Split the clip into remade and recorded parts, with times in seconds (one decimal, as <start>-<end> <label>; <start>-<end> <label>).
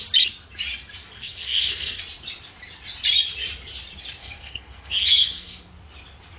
0.0-1.0 recorded; 1.0-2.0 remade; 2.0-4.2 recorded; 4.2-5.7 remade; 5.7-6.4 recorded